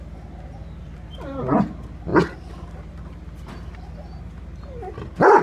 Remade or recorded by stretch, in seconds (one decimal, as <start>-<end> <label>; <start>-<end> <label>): 0.0-5.4 recorded